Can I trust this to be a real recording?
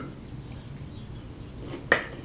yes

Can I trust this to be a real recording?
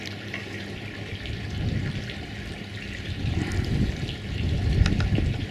yes